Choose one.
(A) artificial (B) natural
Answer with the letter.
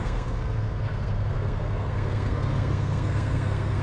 A